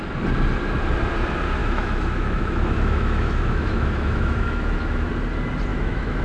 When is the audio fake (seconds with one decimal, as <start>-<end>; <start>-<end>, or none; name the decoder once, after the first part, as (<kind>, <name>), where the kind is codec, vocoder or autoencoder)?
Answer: 1.6-5.1 (autoencoder, DAC-VAE); 5.7-6.2